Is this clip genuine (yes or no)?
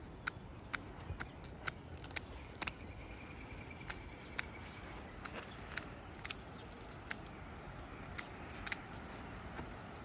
yes